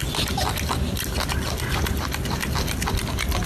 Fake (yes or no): no